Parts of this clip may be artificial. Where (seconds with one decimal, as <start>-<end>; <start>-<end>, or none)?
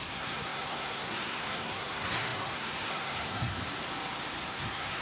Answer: 0.0-3.6; 4.5-5.0